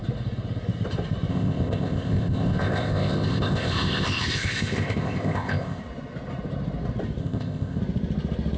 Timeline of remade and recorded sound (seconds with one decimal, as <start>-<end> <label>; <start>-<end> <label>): 0.0-1.3 recorded; 1.3-5.8 remade; 5.8-7.2 recorded; 7.2-7.8 remade; 7.8-8.6 recorded